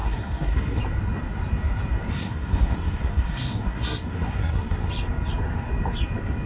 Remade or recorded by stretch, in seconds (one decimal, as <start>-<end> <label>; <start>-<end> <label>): 0.0-0.8 remade; 0.8-2.1 recorded; 2.1-4.9 remade; 4.9-6.5 recorded